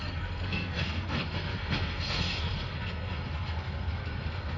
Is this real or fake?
fake